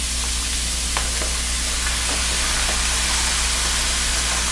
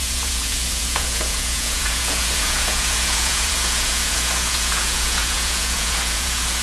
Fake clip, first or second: second